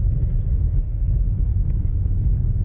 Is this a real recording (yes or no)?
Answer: yes